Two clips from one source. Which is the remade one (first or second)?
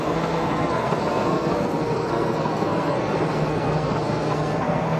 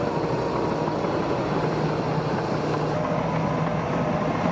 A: first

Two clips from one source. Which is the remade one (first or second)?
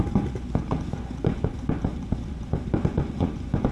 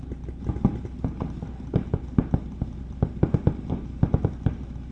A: first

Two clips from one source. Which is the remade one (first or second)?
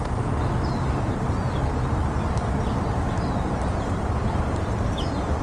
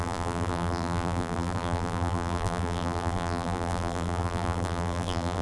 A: second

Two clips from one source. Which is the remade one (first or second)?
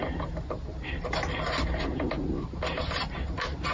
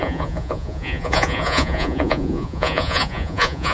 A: second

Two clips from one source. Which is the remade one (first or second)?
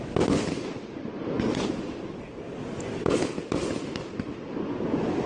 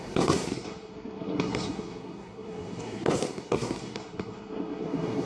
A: second